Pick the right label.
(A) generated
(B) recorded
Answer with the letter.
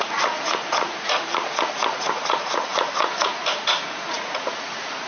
A